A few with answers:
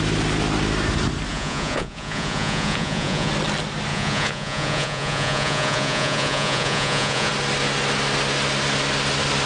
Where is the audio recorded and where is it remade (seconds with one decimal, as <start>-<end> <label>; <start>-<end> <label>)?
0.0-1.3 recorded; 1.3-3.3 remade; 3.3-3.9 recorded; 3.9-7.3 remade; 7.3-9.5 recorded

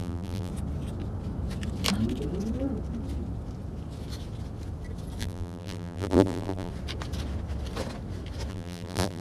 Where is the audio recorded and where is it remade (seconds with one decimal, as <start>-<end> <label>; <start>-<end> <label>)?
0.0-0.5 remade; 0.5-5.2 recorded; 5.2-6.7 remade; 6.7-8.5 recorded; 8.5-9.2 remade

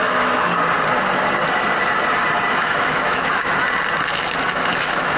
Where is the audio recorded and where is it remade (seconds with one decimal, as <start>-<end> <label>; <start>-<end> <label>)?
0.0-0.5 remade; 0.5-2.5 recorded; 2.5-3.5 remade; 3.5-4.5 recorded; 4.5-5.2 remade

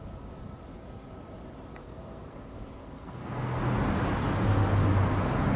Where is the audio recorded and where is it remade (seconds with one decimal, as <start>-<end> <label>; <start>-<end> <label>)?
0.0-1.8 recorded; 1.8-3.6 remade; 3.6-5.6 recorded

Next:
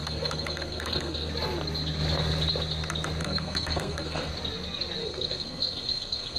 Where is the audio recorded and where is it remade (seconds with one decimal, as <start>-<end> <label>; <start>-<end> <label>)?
0.0-1.3 remade; 1.3-3.2 recorded; 3.2-4.3 remade; 4.3-5.0 recorded; 5.0-6.4 remade

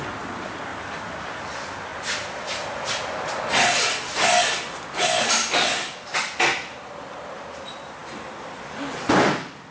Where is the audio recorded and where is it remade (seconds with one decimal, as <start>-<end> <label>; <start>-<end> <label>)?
0.0-0.7 recorded; 0.7-1.3 remade; 1.3-8.0 recorded; 8.0-9.1 remade; 9.1-9.7 recorded

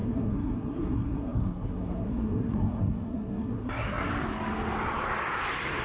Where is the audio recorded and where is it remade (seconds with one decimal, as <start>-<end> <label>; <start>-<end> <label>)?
0.0-4.1 remade; 4.1-5.8 recorded